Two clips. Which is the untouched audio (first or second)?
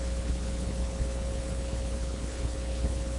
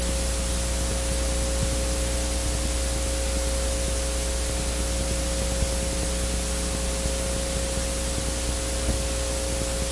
second